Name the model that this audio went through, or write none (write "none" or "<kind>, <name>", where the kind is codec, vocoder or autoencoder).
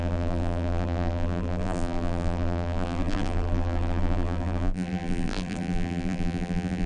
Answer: vocoder, BigVGAN v2